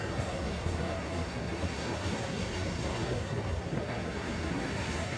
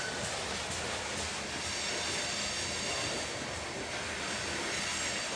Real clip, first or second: second